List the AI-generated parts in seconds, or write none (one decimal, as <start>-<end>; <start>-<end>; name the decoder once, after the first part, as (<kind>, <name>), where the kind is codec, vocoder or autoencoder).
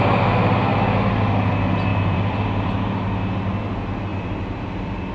1.9-2.9 (vocoder, BigVGAN v2); 4.1-5.1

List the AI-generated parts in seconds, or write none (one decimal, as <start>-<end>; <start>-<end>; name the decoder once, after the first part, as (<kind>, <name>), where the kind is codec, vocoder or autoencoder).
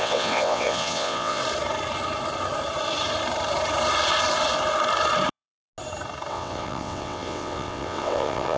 0.0-1.4 (vocoder, WaveNeXt); 5.3-5.7; 6.3-8.6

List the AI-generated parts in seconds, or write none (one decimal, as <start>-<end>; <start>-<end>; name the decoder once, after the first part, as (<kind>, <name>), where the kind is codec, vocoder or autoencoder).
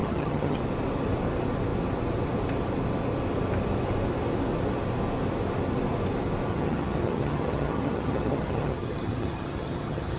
0.0-0.6 (vocoder, HiFi-GAN); 6.5-10.2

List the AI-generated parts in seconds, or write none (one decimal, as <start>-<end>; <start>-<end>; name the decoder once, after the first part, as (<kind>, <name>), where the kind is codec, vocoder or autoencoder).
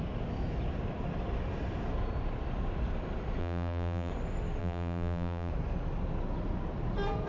3.4-4.1 (vocoder, BigVGAN v2); 4.6-5.5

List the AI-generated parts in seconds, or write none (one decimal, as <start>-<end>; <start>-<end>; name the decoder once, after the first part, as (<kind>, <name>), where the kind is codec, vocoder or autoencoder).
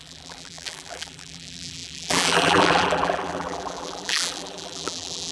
0.0-5.3 (vocoder, BigVGAN v2)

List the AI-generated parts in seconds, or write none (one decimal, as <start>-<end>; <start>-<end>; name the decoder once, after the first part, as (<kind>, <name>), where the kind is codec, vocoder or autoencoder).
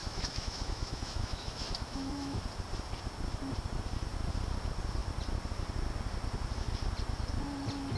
0.0-2.4 (autoencoder, DAC-VAE)